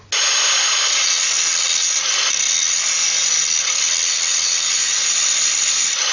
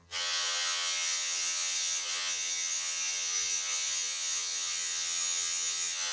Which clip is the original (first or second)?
first